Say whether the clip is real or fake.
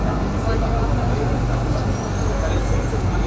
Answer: real